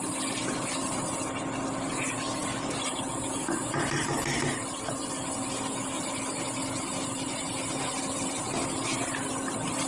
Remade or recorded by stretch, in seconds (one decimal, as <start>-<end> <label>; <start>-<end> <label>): 0.0-2.5 recorded; 2.5-3.1 remade; 3.1-9.9 recorded